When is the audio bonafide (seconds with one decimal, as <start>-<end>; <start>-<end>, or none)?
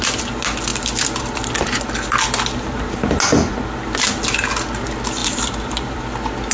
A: 0.0-0.7; 1.5-5.2; 6.0-6.5